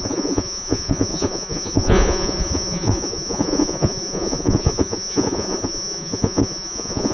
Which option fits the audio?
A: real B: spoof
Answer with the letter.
B